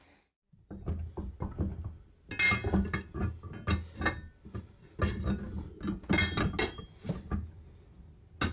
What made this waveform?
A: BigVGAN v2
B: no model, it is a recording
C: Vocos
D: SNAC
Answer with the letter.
B